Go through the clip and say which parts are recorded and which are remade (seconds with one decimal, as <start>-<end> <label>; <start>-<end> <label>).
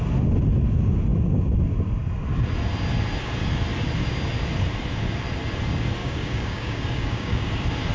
0.0-6.0 recorded; 6.0-7.5 remade; 7.5-7.9 recorded